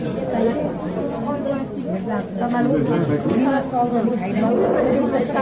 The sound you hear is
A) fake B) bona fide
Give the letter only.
B